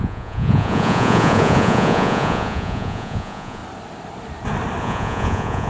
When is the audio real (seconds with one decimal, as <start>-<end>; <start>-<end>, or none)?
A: 3.6-4.8